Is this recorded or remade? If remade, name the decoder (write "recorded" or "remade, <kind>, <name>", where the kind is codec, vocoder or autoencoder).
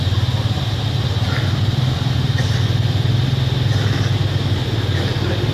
recorded